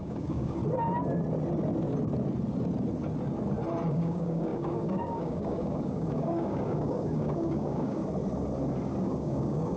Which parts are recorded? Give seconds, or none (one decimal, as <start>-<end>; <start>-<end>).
0.6-3.9; 8.0-9.0